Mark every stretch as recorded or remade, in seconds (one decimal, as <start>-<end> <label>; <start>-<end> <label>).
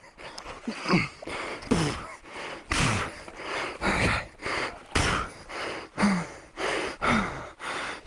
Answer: 0.0-8.1 recorded